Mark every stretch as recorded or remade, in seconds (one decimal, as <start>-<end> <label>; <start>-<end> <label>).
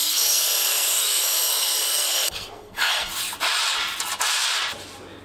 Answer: 0.0-3.1 remade; 3.1-5.2 recorded